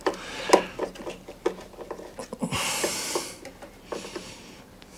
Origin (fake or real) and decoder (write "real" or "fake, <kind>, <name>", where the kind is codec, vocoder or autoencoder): real